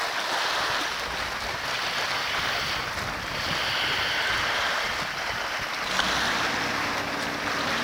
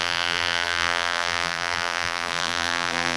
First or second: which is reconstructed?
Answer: second